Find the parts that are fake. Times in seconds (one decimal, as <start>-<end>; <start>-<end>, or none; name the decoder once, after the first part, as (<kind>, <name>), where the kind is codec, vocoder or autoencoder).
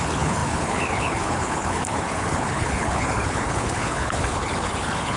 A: 0.0-5.2 (codec, HILCodec)